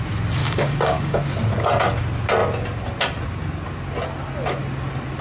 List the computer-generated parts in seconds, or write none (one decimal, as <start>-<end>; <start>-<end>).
0.4-1.2